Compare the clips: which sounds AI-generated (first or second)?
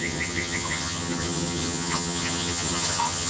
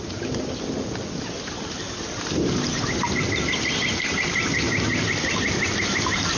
first